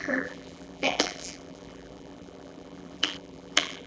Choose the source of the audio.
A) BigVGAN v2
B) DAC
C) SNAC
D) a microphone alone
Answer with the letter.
A